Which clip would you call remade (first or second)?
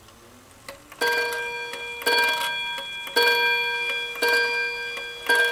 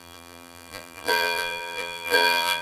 second